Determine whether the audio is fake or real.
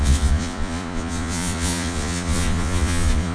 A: fake